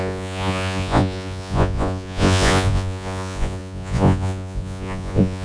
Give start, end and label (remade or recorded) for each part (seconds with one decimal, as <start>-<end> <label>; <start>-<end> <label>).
0.0-5.4 remade